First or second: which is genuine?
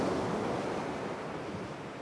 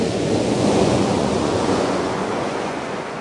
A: first